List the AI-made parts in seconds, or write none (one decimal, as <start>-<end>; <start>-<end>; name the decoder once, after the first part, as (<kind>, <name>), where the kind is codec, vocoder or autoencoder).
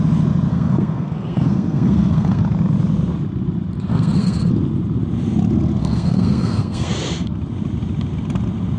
0.5-2.4 (codec, SNAC); 3.9-4.5; 5.8-6.9